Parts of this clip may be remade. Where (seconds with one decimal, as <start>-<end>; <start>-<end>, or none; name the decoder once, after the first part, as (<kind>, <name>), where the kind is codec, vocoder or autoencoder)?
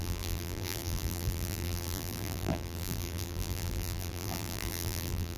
0.0-5.4 (vocoder, BigVGAN v2)